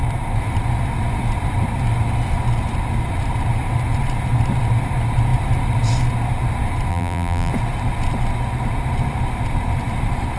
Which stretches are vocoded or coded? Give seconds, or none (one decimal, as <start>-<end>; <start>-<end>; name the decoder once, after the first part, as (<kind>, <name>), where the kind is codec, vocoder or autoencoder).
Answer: 6.9-7.5 (vocoder, BigVGAN v2)